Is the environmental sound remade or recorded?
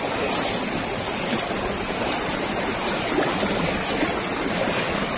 recorded